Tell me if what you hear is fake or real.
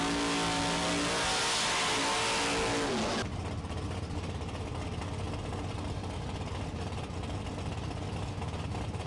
real